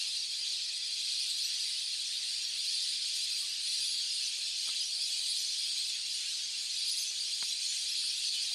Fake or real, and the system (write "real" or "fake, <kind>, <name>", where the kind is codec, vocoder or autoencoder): real